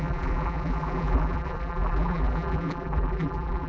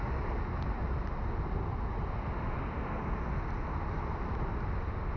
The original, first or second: second